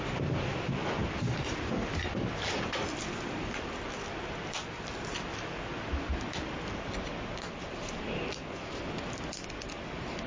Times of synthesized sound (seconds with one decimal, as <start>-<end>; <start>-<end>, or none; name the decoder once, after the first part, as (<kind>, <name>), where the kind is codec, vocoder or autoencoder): none